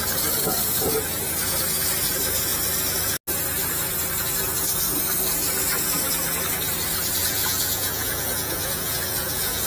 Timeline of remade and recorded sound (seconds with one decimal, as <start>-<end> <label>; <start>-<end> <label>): 0.0-7.2 recorded; 7.2-9.7 remade